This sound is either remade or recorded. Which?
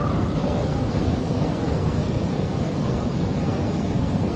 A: remade